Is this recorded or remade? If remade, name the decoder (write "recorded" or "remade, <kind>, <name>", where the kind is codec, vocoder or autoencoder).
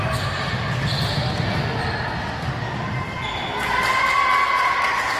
recorded